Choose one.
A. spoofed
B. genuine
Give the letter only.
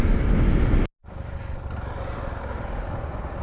B